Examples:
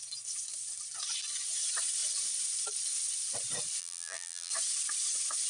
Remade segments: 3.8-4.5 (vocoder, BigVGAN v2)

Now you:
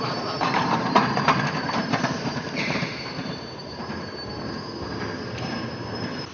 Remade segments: 0.0-3.6 (vocoder, BigVGAN v2); 5.3-6.3

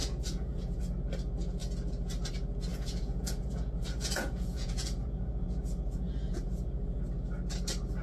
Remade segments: 0.0-0.8 (vocoder, Vocos); 2.7-7.0

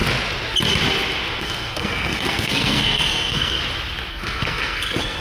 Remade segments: 1.4-3.6 (codec, SNAC); 4.1-5.2

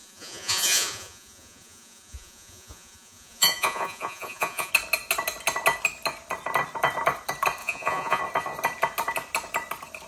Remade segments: 0.0-4.7 (vocoder, Vocos); 7.6-8.2